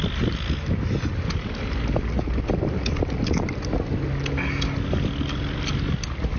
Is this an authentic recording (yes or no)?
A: yes